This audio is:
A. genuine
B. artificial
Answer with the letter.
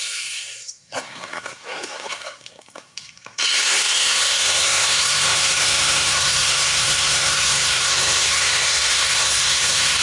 B